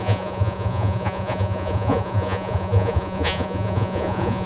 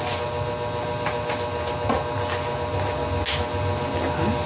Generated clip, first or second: first